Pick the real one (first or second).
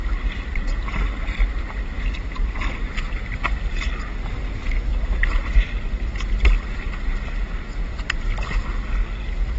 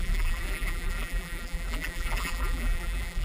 first